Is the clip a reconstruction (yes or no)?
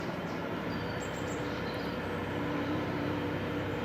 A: yes